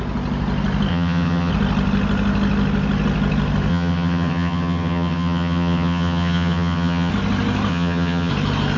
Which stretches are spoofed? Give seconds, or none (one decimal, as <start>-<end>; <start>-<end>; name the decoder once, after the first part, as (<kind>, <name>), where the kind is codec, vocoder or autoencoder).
0.9-1.5 (vocoder, HiFi-GAN); 3.7-7.1; 7.7-8.3